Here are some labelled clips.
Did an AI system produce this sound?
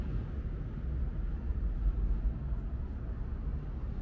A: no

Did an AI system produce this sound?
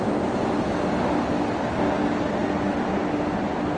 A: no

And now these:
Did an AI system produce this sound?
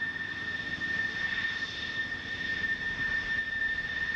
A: no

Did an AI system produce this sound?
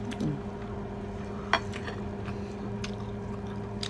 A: no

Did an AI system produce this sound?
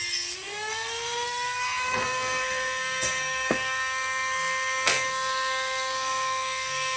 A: yes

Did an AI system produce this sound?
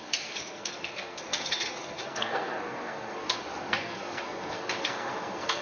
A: yes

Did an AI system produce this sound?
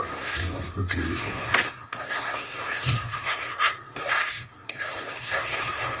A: yes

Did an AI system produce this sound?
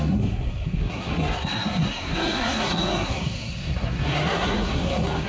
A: yes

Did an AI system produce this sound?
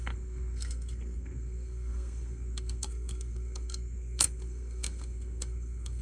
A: yes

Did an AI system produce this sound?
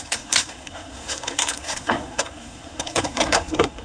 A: yes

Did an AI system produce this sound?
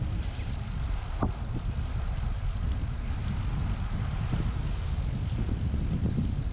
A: no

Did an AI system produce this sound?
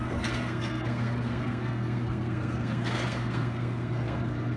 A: yes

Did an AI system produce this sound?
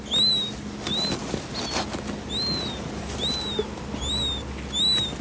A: no